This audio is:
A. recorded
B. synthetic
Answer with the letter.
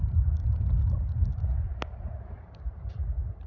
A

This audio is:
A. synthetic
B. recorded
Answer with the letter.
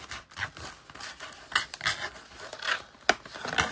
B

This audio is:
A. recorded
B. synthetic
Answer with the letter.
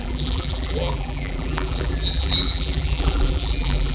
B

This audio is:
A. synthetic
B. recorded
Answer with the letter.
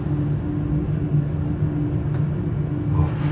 B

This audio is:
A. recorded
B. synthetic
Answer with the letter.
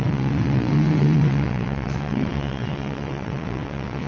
B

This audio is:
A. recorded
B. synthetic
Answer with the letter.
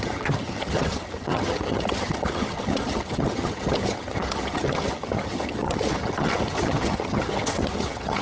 B